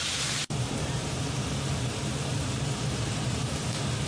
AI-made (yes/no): yes